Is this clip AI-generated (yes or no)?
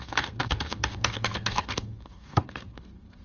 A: yes